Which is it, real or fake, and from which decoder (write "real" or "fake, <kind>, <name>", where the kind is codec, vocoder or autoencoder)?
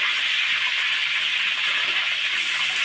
real